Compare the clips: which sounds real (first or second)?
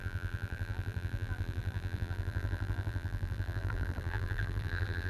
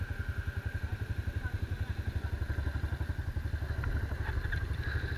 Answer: second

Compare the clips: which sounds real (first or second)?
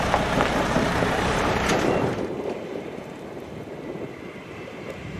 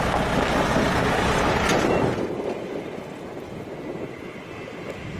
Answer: second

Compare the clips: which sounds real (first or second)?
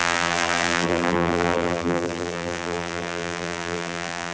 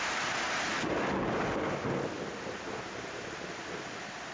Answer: second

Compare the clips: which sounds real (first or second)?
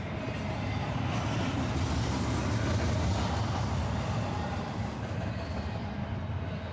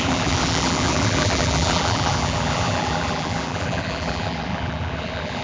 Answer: first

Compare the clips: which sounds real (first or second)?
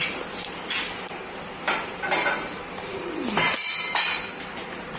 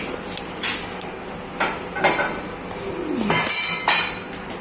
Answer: second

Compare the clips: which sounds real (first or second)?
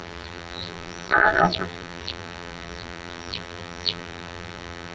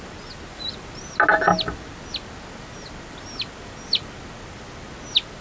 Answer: second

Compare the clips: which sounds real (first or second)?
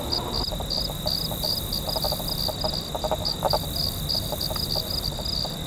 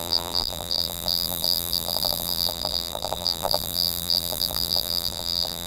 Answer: first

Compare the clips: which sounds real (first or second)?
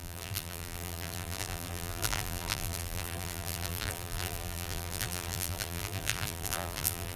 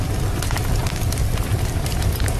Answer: second